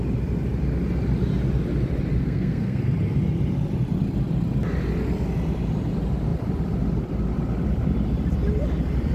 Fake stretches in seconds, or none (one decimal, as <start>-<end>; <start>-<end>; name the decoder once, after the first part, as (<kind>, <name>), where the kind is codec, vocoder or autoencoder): 2.2-2.8 (codec, SNAC)